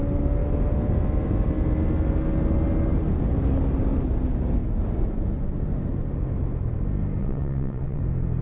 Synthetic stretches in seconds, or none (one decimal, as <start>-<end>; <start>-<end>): 7.2-8.0